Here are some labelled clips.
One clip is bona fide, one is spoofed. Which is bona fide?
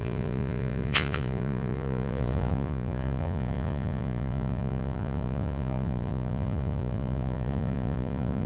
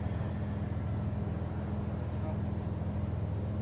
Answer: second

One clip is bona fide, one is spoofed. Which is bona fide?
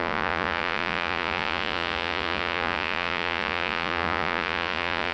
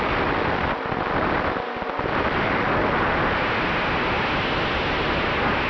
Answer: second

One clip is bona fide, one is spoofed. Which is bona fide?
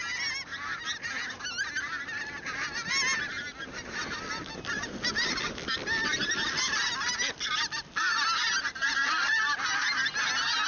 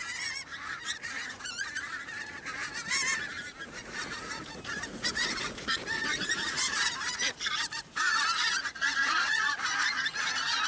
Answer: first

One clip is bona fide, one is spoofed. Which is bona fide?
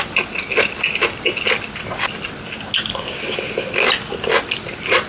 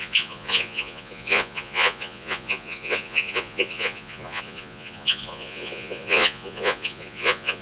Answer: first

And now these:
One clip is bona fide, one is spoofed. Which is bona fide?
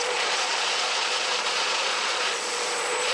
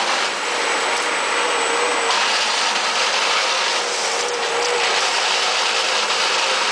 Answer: second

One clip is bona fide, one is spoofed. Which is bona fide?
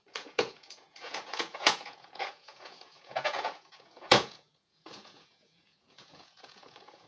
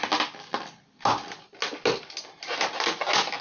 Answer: second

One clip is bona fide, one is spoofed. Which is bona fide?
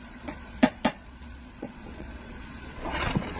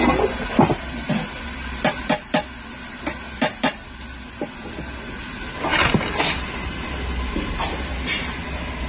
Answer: second